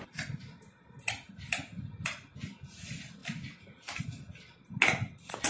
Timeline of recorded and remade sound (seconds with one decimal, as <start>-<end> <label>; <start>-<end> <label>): 0.0-5.5 recorded